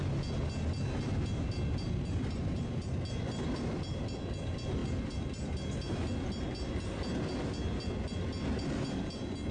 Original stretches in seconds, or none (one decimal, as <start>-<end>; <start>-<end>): 0.0-9.5